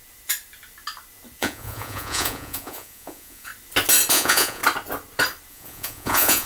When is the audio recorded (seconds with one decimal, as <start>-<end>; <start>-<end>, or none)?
0.0-1.4; 3.5-4.1; 4.6-5.5